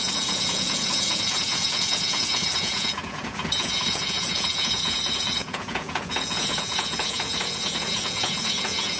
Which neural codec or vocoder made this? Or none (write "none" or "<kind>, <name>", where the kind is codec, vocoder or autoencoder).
vocoder, Vocos